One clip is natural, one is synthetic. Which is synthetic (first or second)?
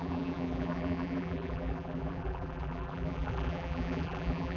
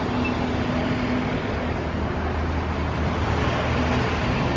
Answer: first